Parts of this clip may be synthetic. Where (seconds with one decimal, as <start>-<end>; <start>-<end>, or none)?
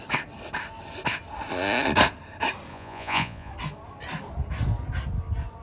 2.7-3.5